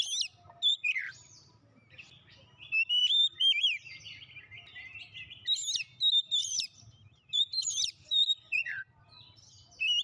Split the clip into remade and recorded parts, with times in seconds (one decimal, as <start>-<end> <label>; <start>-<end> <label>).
0.0-0.7 recorded; 0.7-1.5 remade; 1.5-3.0 recorded; 3.0-4.0 remade; 4.0-6.4 recorded; 6.4-9.0 remade; 9.0-10.0 recorded